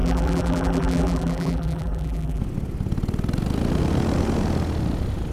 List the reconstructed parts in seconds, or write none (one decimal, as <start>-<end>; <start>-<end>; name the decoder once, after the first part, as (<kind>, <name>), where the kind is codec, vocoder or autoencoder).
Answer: 0.0-2.4 (vocoder, BigVGAN v2)